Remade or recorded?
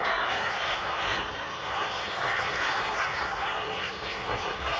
remade